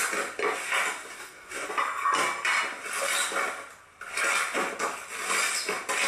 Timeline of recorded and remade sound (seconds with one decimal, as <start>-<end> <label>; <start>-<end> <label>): 0.0-1.2 recorded; 1.2-1.7 remade; 1.7-6.1 recorded